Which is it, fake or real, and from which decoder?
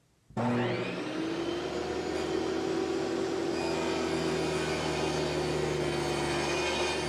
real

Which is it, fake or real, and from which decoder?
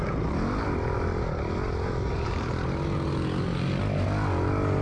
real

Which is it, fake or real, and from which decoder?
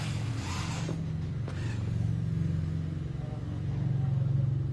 real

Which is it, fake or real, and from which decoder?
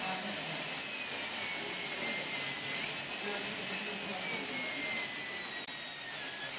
real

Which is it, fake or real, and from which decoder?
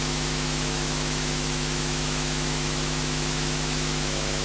fake, autoencoder, DAC-VAE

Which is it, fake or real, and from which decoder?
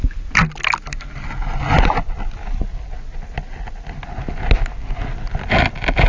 real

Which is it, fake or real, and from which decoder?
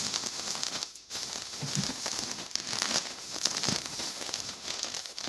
fake, autoencoder, DAC-VAE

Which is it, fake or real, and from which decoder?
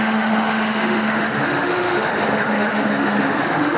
fake, autoencoder, DAC-VAE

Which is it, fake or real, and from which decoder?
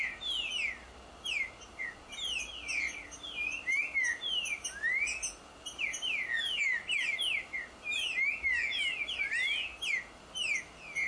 real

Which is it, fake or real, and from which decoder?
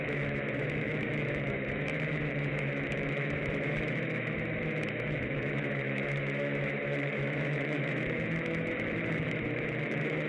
fake, autoencoder, DAC-VAE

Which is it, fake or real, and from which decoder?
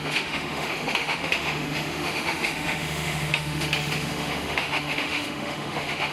fake, autoencoder, DAC-VAE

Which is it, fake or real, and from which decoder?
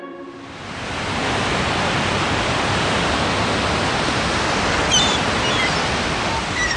real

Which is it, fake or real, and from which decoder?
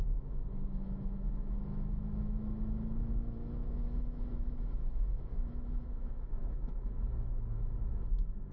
fake, autoencoder, DAC-VAE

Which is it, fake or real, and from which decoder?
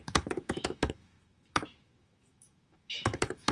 fake, autoencoder, DAC-VAE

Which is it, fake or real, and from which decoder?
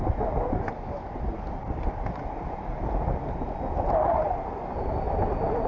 real